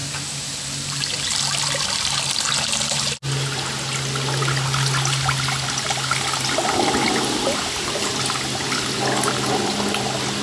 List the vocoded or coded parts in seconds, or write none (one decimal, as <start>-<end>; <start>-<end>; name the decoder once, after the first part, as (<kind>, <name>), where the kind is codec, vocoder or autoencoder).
none